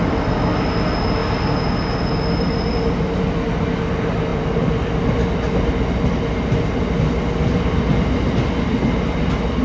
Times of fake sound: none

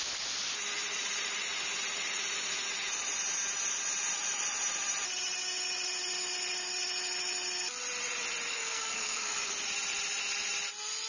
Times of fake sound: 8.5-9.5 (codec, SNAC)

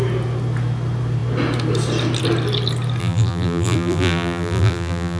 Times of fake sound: 3.0-5.2 (vocoder, BigVGAN v2)

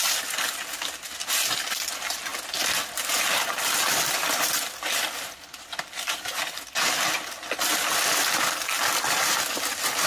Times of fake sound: none